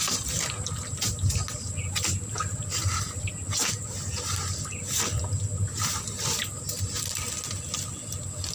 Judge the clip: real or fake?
real